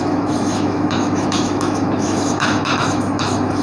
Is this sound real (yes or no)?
no